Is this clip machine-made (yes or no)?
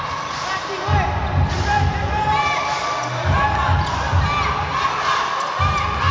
no